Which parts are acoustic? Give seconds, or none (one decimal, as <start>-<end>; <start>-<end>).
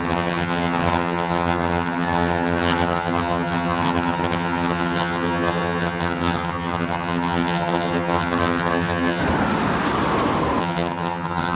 9.2-10.6